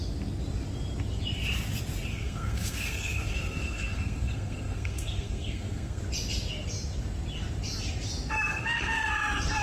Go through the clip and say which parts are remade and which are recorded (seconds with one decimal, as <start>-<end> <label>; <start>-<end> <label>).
0.0-2.1 recorded; 2.1-6.0 remade; 6.0-8.5 recorded; 8.5-9.1 remade; 9.1-9.6 recorded